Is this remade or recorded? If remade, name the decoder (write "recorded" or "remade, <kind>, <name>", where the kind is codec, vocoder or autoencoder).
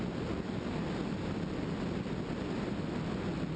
recorded